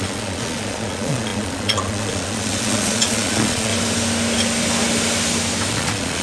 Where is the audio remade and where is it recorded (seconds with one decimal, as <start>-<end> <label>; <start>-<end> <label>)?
0.0-3.7 remade; 3.7-5.7 recorded; 5.7-6.2 remade